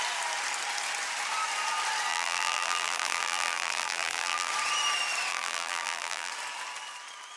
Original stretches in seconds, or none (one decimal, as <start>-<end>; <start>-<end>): 0.0-2.1; 4.5-5.3; 6.3-7.4